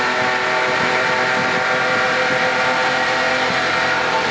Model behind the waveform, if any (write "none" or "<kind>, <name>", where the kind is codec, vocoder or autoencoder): none